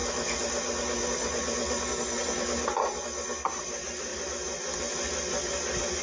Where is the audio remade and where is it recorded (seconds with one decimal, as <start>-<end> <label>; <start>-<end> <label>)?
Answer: 0.0-6.0 recorded